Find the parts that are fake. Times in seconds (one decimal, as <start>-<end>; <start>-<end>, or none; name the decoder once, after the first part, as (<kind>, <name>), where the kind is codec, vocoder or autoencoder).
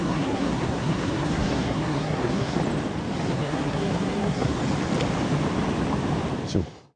0.0-2.6 (codec, SNAC); 3.3-4.6